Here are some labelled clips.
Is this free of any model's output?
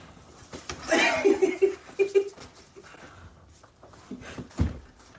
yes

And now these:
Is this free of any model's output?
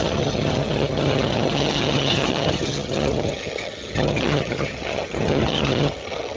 no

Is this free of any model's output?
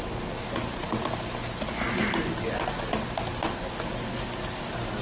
yes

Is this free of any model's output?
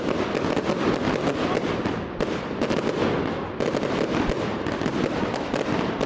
yes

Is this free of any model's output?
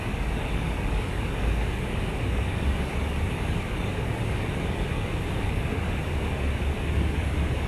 no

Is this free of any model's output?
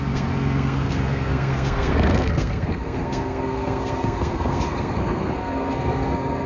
no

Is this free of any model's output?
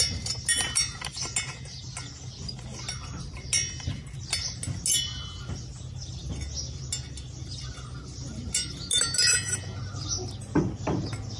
yes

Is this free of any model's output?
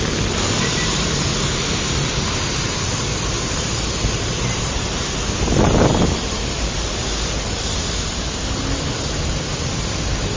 yes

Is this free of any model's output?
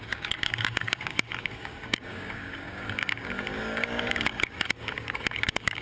no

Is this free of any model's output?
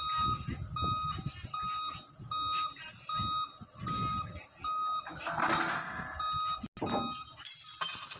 yes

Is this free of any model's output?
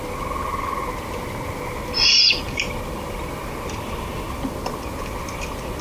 yes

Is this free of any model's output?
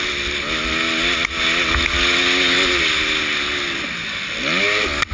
yes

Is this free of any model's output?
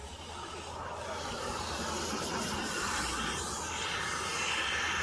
yes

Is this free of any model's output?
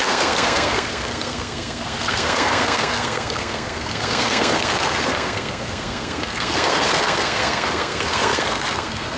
no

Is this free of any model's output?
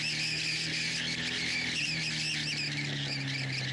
yes